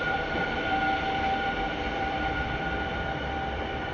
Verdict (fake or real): fake